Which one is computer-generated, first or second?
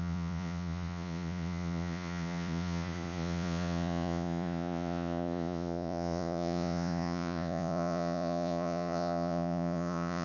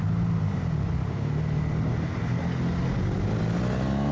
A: first